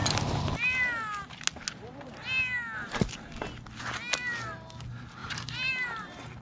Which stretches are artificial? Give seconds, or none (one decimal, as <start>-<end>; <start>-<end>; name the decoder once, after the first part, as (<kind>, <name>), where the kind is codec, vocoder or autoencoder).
5.2-6.4 (vocoder, BigVGAN v2)